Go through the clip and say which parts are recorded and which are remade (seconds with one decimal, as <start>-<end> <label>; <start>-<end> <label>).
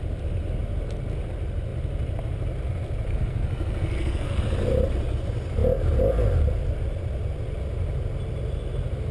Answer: 0.0-3.1 recorded; 3.1-4.4 remade; 4.4-9.1 recorded